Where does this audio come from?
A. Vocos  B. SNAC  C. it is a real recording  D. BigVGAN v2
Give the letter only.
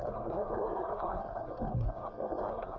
B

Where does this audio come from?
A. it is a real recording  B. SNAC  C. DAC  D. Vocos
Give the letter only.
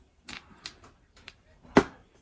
A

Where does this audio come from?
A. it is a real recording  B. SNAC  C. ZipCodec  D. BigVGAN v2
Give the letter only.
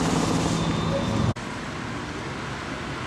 A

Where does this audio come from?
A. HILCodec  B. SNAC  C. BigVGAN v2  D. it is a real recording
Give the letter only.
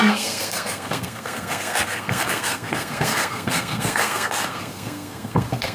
B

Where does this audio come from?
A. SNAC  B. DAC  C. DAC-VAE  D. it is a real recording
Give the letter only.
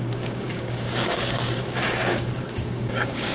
B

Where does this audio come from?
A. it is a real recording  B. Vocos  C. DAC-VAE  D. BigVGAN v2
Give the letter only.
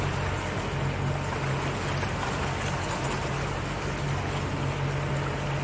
A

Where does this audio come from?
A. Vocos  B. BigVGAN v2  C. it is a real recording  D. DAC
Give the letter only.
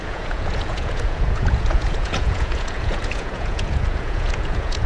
A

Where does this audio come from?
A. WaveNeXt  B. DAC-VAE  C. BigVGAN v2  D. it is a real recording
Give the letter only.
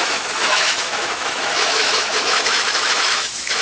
B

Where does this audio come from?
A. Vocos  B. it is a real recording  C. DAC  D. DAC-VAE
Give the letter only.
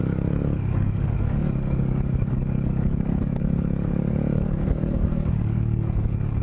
C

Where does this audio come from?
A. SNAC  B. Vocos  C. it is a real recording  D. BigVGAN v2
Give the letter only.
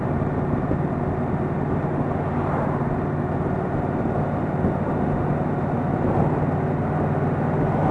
C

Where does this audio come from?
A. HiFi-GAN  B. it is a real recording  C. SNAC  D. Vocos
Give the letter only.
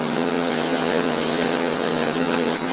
A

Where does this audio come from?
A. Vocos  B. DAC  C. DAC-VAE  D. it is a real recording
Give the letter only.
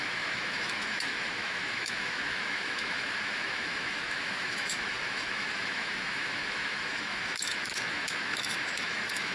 C